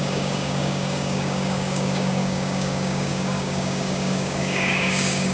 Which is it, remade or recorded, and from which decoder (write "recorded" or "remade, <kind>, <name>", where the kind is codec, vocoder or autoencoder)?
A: remade, codec, DAC